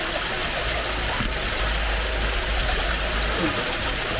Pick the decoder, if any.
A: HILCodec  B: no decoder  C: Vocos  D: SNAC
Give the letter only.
B